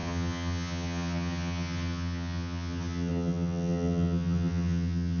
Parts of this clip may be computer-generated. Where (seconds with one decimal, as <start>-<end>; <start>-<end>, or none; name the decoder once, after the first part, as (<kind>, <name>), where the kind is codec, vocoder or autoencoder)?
0.0-5.2 (vocoder, HiFi-GAN)